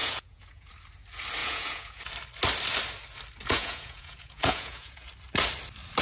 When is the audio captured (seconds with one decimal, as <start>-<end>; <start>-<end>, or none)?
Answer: 0.7-1.4; 2.0-3.4; 5.1-6.0